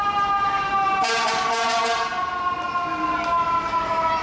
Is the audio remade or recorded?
recorded